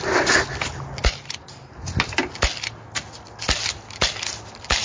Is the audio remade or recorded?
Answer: recorded